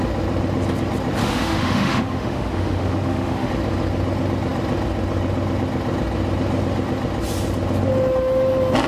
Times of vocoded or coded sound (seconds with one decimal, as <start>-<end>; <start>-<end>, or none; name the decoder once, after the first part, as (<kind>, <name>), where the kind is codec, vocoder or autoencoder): 1.2-3.5 (autoencoder, DAC-VAE)